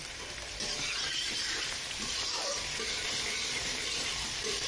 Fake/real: fake